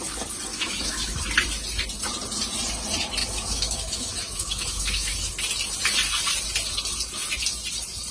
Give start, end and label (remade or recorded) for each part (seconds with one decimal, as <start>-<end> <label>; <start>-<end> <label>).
0.0-0.5 recorded; 0.5-1.2 remade; 1.2-3.2 recorded; 3.2-5.3 remade; 5.3-8.1 recorded